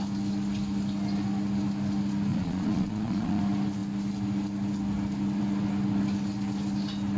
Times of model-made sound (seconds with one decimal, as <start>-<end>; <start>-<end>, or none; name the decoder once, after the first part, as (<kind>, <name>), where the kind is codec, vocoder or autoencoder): 2.3-3.4 (vocoder, Vocos)

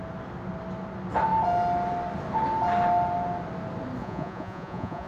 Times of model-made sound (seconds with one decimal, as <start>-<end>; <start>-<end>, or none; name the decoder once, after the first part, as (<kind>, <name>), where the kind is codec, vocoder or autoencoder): 4.0-5.1 (vocoder, Vocos)

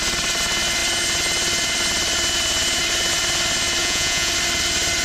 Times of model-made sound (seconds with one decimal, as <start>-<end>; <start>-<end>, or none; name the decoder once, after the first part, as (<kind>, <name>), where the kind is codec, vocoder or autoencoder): 3.8-4.3 (vocoder, Vocos)

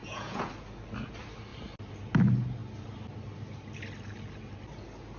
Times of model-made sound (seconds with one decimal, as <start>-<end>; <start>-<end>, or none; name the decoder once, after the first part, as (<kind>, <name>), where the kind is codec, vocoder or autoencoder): 0.0-0.5 (vocoder, Vocos)

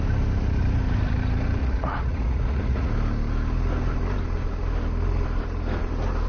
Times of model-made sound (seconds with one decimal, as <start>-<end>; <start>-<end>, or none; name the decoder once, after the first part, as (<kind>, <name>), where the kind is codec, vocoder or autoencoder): 1.6-2.9 (vocoder, Vocos)

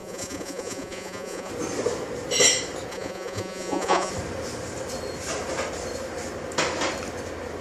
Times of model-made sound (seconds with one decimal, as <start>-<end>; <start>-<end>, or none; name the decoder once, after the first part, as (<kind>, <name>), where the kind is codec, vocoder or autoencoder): 0.0-1.5 (vocoder, Vocos); 2.9-4.1

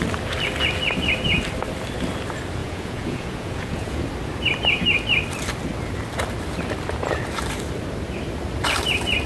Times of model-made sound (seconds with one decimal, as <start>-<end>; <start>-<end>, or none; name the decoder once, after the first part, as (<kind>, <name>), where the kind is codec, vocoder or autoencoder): 2.6-4.0 (vocoder, Vocos)